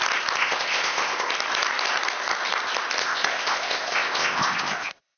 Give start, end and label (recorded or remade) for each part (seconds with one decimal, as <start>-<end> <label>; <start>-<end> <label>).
0.0-0.4 recorded; 0.4-1.3 remade; 1.3-3.0 recorded; 3.0-5.2 remade